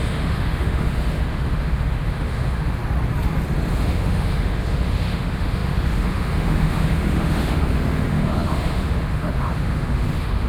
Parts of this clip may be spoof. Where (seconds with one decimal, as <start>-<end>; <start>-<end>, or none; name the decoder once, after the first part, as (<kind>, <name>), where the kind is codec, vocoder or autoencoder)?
0.0-2.8 (autoencoder, DAC-VAE); 3.7-10.5